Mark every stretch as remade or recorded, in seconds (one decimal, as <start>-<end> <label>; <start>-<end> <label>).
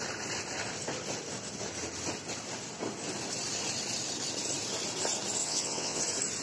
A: 0.0-5.4 recorded; 5.4-6.0 remade; 6.0-6.4 recorded